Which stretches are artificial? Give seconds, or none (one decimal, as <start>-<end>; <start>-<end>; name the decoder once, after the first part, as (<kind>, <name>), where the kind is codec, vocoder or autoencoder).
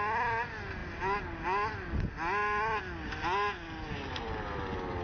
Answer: none